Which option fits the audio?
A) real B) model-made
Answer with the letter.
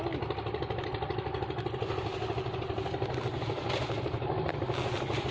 A